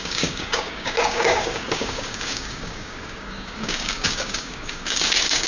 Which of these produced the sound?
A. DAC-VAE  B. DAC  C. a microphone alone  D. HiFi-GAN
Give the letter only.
B